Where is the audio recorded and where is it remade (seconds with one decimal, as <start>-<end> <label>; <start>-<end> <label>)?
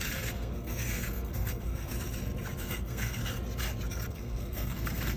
0.0-1.9 remade; 1.9-2.7 recorded; 2.7-3.2 remade; 3.2-4.1 recorded; 4.1-5.2 remade